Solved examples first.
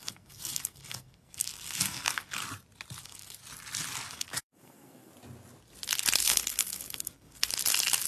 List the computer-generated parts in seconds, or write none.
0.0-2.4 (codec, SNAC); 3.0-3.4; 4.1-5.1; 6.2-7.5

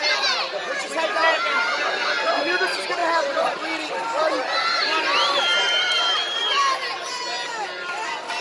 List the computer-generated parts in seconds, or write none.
none